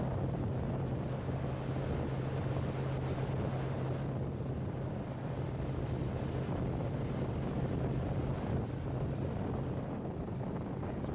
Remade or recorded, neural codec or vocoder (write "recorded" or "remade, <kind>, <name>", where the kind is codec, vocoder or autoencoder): recorded